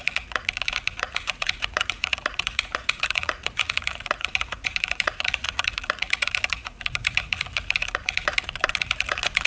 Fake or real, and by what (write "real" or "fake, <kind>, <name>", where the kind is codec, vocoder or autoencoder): fake, vocoder, Vocos